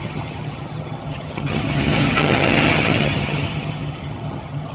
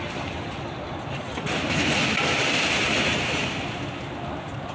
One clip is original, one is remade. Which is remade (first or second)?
first